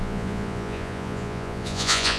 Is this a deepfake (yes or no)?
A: yes